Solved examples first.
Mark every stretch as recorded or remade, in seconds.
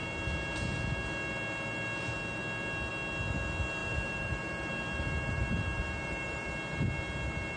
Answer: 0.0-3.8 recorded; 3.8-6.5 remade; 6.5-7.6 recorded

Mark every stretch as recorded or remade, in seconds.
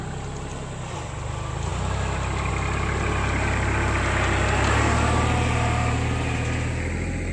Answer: 0.0-7.3 recorded